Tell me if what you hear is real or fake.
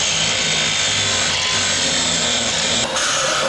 real